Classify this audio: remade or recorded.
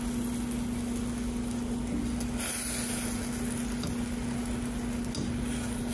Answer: recorded